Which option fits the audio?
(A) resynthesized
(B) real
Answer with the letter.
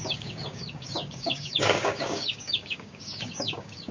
A